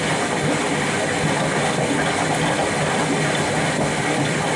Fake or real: real